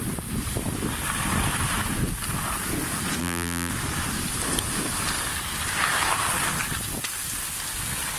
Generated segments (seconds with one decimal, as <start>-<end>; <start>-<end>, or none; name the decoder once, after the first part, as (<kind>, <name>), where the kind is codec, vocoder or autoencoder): 3.2-3.7 (vocoder, BigVGAN v2)